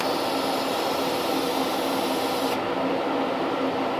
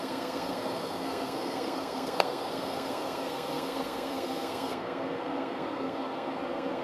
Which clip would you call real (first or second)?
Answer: first